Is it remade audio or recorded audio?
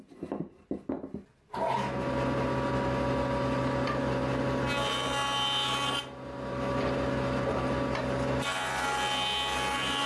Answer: recorded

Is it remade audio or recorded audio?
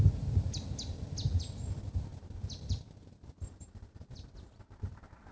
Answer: recorded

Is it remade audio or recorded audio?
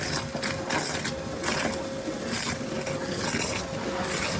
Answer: recorded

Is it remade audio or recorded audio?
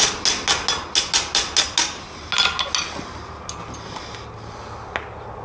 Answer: recorded